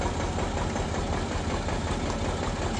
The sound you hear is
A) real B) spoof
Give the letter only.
A